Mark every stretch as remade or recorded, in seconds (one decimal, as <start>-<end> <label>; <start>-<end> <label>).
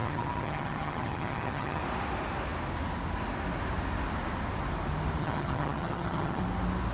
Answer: 0.0-1.8 remade; 1.8-5.2 recorded; 5.2-6.4 remade; 6.4-6.9 recorded